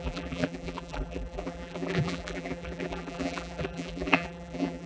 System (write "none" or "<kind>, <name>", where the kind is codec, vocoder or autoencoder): vocoder, BigVGAN v2